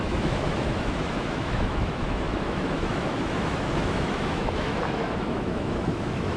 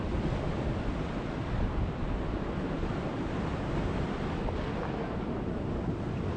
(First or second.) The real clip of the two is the second